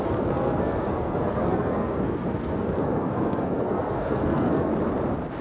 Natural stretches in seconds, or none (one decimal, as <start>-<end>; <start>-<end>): 4.7-5.4